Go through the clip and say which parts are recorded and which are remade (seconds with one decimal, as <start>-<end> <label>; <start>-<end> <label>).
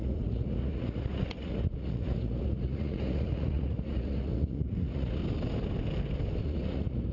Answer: 0.0-5.2 remade; 5.2-6.4 recorded; 6.4-7.1 remade